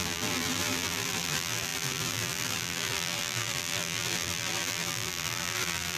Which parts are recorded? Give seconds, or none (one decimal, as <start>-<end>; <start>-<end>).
none